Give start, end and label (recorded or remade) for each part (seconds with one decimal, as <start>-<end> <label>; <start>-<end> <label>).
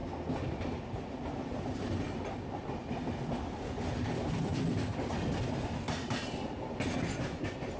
0.0-7.8 recorded